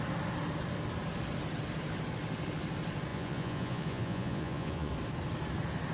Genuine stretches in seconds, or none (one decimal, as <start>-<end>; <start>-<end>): 0.0-3.1; 4.9-5.9